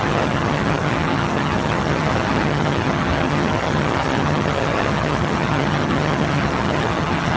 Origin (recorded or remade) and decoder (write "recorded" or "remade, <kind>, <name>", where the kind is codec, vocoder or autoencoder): remade, vocoder, HiFi-GAN